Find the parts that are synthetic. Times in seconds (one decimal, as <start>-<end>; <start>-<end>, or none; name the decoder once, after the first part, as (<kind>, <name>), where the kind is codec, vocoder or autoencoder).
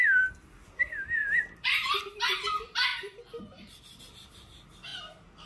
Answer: 1.2-2.0 (vocoder, BigVGAN v2)